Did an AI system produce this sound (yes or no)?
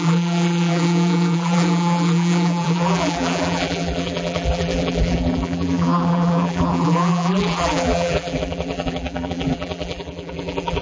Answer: yes